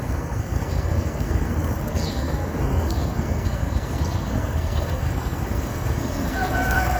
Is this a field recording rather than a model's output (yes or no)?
no